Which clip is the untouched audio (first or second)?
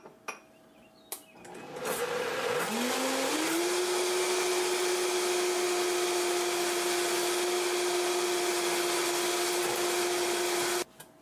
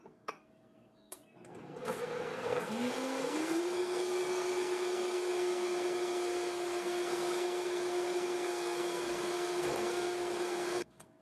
first